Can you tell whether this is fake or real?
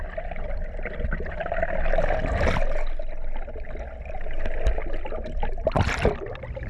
real